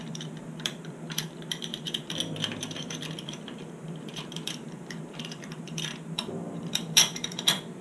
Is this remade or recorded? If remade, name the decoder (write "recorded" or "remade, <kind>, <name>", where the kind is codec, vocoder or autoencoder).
remade, vocoder, BigVGAN v2